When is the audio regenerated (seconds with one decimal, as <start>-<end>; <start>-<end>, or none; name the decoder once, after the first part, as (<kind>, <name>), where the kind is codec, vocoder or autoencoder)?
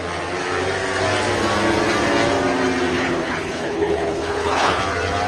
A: 2.9-4.8 (codec, HILCodec)